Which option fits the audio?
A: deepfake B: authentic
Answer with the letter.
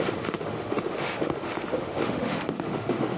A